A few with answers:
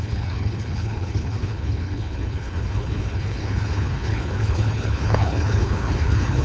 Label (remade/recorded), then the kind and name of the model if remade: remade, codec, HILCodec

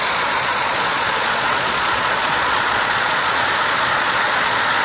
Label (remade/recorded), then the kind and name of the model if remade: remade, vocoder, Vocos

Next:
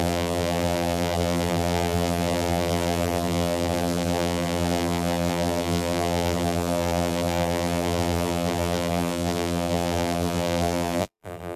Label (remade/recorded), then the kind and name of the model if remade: remade, vocoder, BigVGAN v2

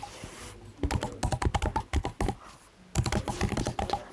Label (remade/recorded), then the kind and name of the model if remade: recorded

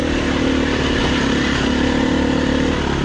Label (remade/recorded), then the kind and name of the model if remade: recorded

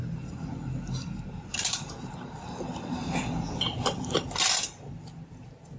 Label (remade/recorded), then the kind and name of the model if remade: recorded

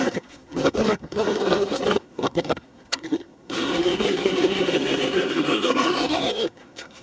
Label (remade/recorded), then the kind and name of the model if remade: remade, codec, SNAC